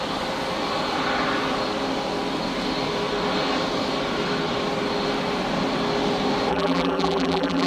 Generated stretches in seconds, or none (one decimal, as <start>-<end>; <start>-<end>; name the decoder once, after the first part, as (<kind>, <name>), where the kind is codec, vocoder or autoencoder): 6.5-7.7 (vocoder, BigVGAN v2)